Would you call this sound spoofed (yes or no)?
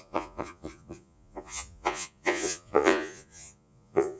yes